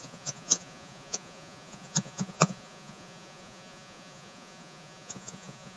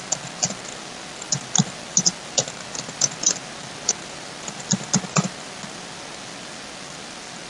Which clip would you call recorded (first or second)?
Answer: second